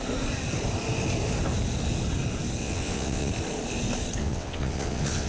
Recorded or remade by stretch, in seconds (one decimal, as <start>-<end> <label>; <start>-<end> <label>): 0.0-2.6 recorded; 2.6-3.3 remade; 3.3-4.2 recorded; 4.2-5.3 remade